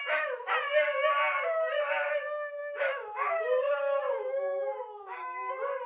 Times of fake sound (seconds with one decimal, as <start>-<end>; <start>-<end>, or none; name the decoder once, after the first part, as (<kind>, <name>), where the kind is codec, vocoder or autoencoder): 2.6-5.5 (autoencoder, DAC-VAE)